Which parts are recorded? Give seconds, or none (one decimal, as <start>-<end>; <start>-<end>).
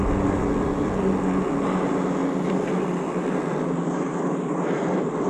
0.0-5.3